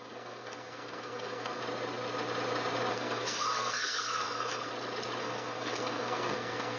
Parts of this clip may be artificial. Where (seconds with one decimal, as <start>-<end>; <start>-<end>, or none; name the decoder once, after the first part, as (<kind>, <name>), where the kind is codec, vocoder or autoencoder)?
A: 0.0-1.6 (codec, SNAC); 2.9-4.7; 5.2-6.8